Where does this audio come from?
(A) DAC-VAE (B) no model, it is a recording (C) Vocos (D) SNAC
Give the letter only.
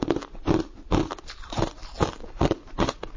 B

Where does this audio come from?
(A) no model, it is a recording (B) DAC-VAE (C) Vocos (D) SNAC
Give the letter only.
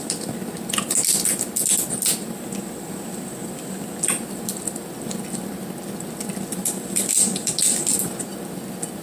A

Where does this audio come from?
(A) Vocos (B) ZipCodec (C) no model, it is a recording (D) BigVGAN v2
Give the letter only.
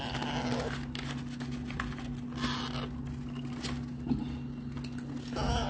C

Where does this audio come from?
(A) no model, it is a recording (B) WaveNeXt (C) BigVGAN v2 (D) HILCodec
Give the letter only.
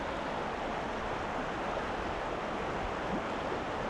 A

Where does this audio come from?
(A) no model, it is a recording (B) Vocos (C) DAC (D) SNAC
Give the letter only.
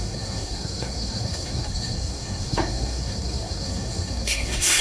D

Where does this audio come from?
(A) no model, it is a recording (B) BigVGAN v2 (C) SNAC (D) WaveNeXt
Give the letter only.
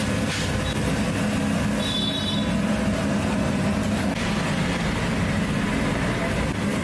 A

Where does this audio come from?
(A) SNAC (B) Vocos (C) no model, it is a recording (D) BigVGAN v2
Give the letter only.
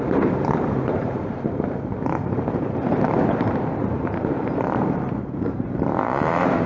D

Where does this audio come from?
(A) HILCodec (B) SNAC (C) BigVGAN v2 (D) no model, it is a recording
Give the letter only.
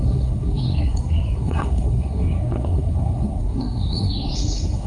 B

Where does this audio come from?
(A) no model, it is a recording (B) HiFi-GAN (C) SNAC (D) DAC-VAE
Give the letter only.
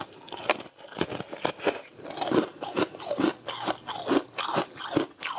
A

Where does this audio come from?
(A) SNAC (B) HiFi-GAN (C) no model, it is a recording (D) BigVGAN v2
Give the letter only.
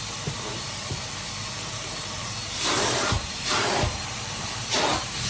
D